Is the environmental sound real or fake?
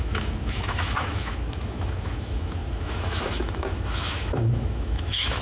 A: fake